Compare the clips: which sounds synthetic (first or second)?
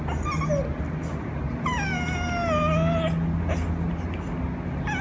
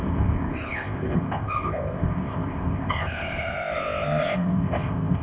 second